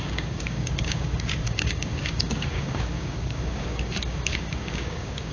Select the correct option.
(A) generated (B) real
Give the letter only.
A